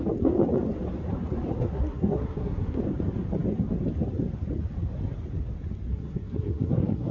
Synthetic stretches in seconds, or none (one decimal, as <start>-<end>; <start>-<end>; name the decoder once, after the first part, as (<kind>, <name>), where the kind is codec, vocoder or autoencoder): 1.5-2.8 (codec, SNAC); 5.9-7.1